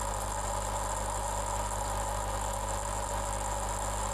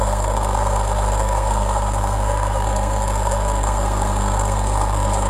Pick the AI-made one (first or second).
second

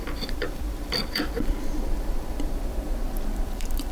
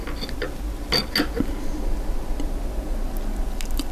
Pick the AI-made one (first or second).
first